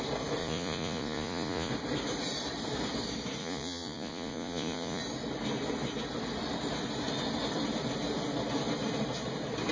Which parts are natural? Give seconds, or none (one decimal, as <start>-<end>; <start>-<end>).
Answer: 0.0-0.4; 1.7-3.4; 5.0-9.7